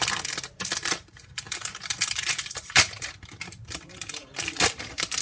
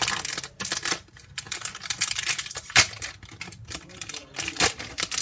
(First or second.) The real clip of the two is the second